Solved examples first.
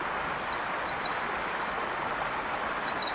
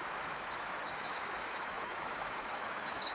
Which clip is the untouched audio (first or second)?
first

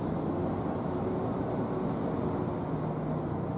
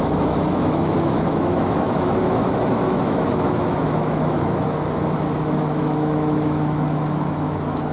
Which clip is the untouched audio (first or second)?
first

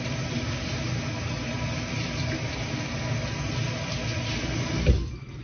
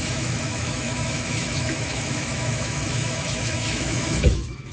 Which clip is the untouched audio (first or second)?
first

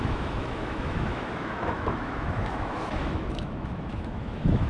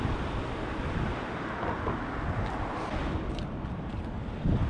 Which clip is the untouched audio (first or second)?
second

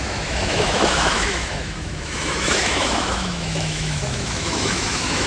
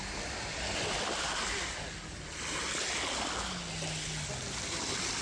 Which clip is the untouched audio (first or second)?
second